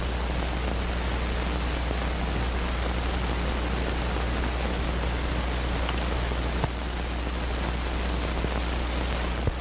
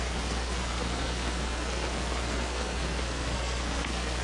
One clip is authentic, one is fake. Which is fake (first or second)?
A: second